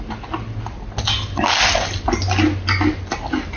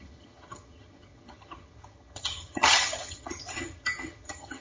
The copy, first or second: second